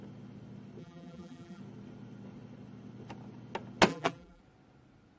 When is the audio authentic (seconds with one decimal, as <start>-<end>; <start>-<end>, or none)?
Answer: 0.0-0.8; 1.6-3.9; 4.4-5.2